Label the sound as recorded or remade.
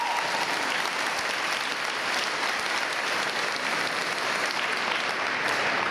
recorded